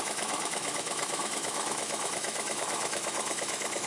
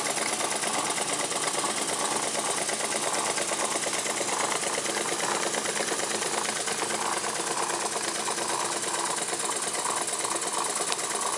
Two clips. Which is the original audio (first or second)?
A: second